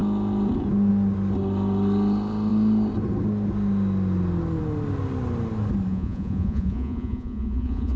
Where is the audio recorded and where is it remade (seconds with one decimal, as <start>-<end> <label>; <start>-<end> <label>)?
0.0-5.9 recorded; 5.9-8.0 remade